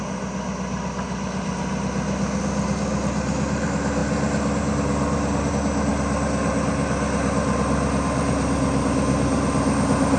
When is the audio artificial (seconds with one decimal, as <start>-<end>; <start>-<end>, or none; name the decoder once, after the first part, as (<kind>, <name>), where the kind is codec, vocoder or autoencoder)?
none